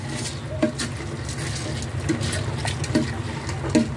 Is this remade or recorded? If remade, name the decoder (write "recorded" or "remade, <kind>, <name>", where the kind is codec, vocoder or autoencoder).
recorded